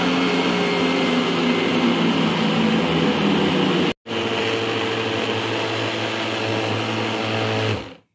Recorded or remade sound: recorded